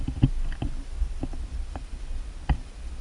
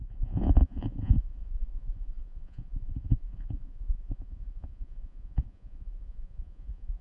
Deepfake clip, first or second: second